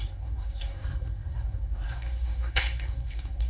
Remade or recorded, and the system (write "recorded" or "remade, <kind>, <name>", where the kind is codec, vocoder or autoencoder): remade, codec, SNAC